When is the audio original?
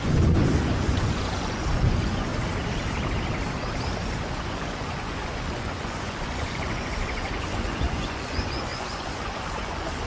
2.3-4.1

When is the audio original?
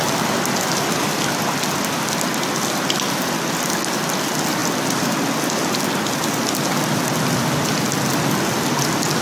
0.0-9.2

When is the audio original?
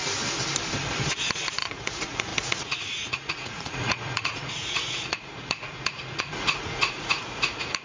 0.0-1.6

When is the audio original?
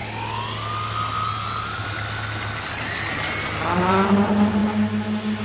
0.0-5.4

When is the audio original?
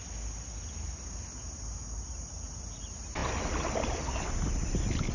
0.0-5.1